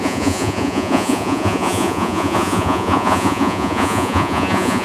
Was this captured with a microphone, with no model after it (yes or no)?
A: no